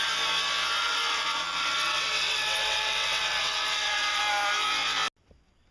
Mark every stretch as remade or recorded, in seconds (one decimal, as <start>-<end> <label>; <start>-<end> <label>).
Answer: 0.0-0.8 recorded; 0.8-4.2 remade; 4.2-5.7 recorded